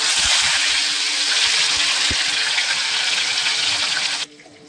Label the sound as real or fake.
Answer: real